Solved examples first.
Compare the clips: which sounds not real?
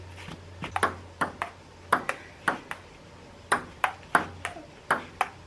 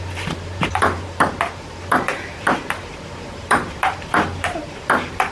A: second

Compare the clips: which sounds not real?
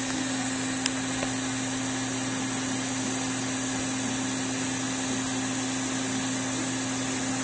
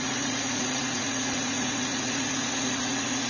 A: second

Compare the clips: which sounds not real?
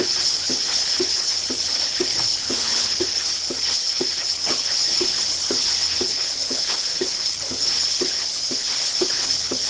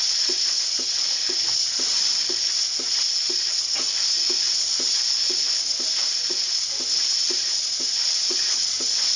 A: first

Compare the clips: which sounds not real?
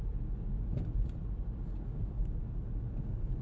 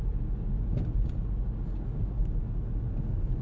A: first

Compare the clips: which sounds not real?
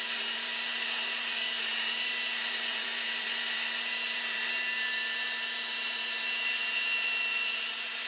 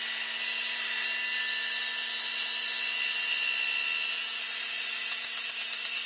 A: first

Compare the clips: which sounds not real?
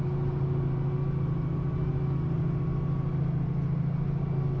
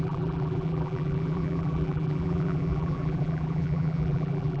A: second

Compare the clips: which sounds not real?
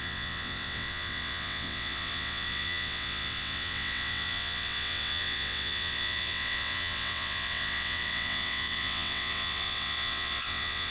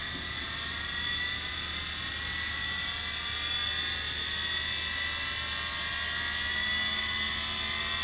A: first